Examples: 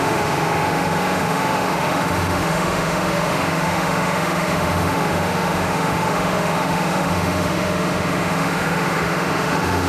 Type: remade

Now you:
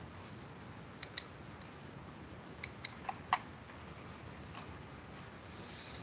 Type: recorded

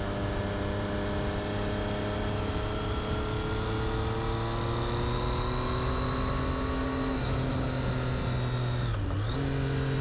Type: recorded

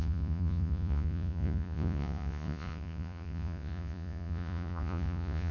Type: remade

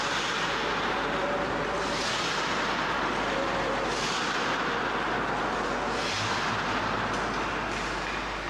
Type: recorded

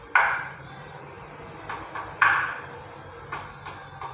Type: recorded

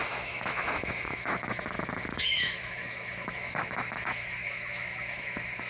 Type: remade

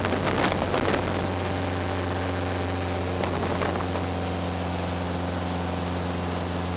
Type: recorded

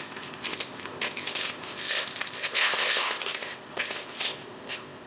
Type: remade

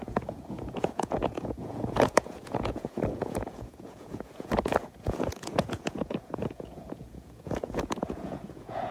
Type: remade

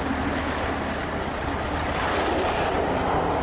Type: recorded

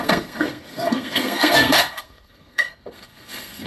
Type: remade